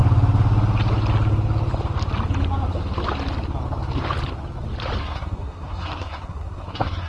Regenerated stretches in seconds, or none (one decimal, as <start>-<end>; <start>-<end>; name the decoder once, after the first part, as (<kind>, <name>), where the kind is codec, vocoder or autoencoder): 5.0-7.1 (codec, SNAC)